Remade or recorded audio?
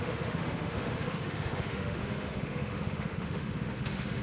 remade